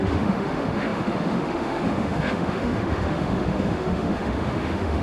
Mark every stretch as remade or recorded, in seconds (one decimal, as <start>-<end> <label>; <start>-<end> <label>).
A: 0.0-5.0 remade